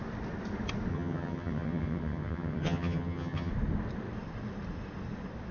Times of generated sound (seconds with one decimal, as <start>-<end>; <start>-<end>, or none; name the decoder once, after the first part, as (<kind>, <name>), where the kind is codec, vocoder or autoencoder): 0.9-3.5 (vocoder, HiFi-GAN)